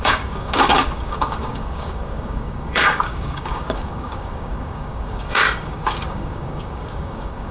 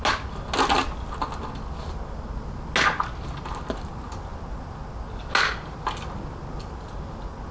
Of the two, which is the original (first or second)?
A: second